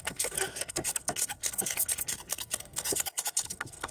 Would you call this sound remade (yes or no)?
yes